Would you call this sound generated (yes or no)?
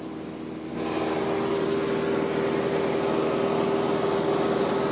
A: no